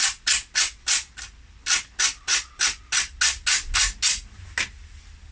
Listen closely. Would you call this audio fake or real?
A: real